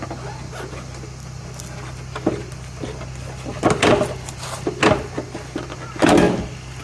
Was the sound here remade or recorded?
recorded